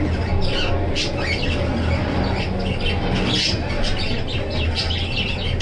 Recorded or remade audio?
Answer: recorded